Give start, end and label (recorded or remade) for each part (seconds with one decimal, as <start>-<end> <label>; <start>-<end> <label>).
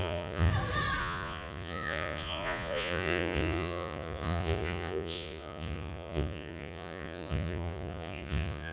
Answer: 0.0-0.5 remade; 0.5-1.0 recorded; 1.0-8.7 remade